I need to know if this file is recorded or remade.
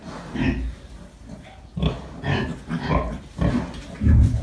recorded